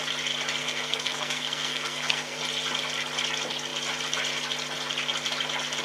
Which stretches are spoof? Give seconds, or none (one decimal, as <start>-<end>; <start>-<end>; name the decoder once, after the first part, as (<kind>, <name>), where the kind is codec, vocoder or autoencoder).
0.6-2.4 (codec, SNAC)